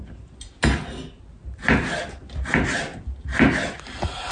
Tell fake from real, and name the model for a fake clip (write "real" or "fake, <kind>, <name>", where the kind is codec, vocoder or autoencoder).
real